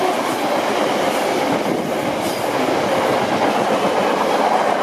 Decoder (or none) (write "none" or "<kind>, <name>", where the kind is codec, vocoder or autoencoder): none